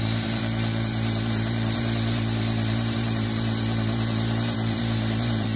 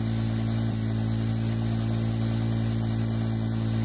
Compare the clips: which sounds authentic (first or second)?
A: second